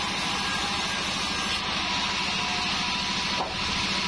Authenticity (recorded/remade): recorded